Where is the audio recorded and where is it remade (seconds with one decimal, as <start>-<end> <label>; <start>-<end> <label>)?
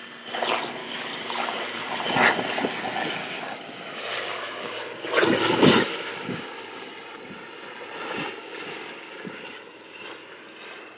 0.0-0.8 recorded; 0.8-1.6 remade; 1.6-3.2 recorded; 3.2-6.9 remade; 6.9-8.4 recorded; 8.4-9.4 remade; 9.4-11.0 recorded